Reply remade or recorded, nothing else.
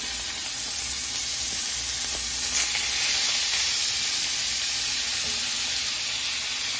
recorded